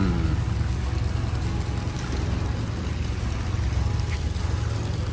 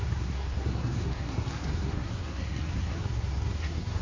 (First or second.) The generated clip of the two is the second